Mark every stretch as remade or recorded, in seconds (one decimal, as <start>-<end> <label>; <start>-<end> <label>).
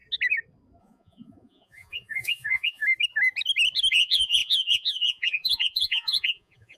0.0-0.8 recorded; 0.8-2.8 remade; 2.8-3.9 recorded; 3.9-6.8 remade